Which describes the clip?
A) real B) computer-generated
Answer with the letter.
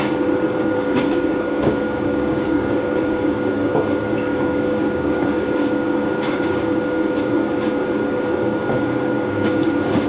B